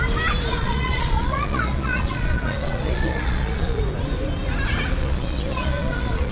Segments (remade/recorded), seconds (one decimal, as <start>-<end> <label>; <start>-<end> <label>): 0.0-0.6 recorded; 0.6-3.8 remade; 3.8-5.0 recorded; 5.0-6.3 remade